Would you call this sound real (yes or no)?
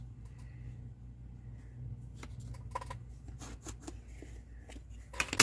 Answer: yes